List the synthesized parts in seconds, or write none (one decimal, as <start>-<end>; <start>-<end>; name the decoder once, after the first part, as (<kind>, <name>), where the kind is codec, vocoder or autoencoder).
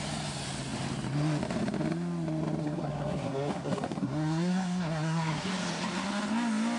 2.6-5.5 (codec, SNAC)